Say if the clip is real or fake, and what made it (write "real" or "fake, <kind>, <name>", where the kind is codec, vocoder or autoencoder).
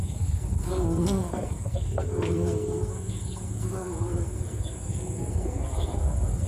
fake, codec, SNAC